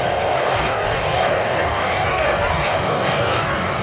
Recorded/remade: remade